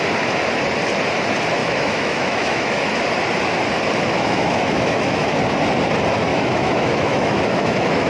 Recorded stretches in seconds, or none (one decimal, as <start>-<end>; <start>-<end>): 0.0-1.6; 2.9-4.1; 5.3-6.3